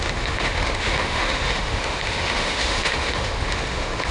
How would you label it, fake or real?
fake